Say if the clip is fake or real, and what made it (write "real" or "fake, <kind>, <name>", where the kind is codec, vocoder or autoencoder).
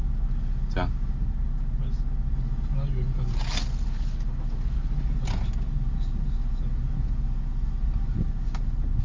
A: real